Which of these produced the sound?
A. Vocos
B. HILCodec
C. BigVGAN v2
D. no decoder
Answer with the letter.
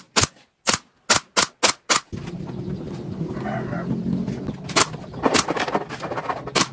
D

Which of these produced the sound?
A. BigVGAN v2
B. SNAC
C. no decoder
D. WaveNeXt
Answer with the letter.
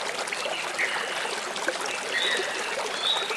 C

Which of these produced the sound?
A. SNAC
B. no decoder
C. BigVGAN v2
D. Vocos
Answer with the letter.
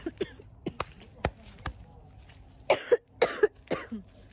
B